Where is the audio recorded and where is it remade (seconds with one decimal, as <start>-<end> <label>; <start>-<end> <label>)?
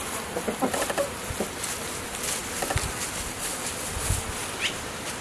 0.0-5.2 recorded